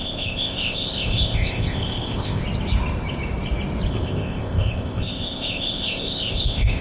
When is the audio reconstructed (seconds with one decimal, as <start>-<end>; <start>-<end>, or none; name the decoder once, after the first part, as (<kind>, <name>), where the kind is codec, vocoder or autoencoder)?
0.0-2.4 (codec, ZipCodec); 3.9-6.8